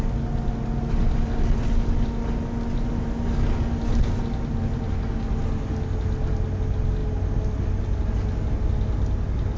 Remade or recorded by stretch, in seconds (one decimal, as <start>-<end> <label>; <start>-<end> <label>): 0.0-9.6 recorded